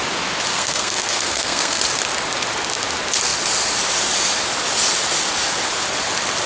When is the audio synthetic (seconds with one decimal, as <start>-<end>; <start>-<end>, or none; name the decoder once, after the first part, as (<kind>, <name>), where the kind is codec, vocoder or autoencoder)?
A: 0.5-1.8 (codec, SNAC)